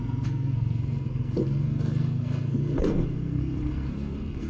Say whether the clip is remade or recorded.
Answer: remade